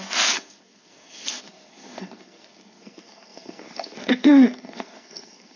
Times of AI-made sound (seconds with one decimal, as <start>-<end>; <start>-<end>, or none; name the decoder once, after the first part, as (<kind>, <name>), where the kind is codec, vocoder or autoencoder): 0.0-5.6 (codec, SNAC)